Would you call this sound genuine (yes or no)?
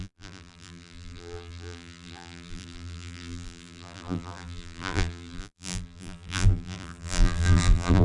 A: no